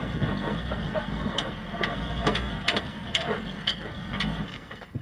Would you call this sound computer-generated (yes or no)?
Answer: yes